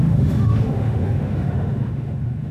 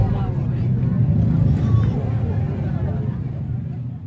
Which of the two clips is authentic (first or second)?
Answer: second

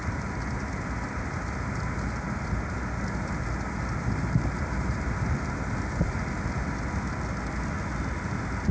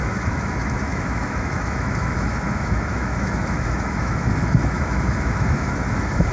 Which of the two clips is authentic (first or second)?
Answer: first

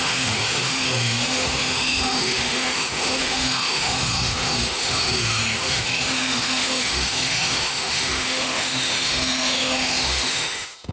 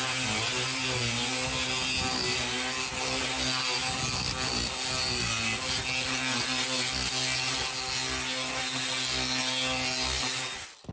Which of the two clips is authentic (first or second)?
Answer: second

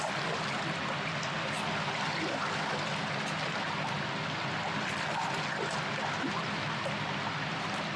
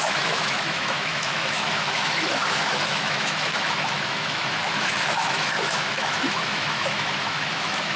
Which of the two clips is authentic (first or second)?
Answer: first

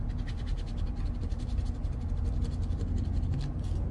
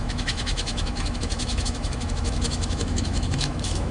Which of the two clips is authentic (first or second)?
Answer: first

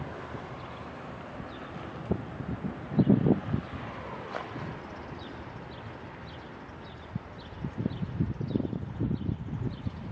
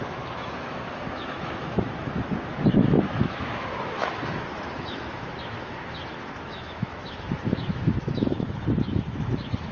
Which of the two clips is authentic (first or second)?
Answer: first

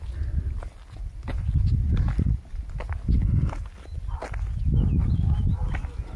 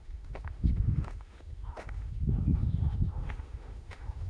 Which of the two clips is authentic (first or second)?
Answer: first